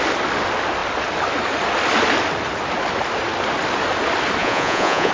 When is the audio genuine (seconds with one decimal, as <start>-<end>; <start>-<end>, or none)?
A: 0.0-4.4